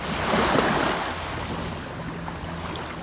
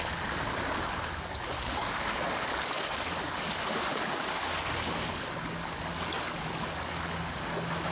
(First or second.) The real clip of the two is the first